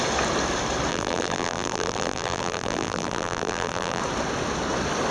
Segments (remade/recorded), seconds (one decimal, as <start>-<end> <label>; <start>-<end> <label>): 0.0-0.9 recorded; 0.9-4.0 remade; 4.0-5.1 recorded